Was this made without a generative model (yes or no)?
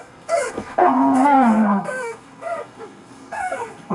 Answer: no